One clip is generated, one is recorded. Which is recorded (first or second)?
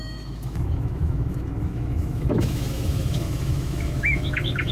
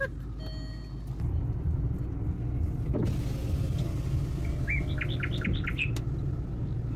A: second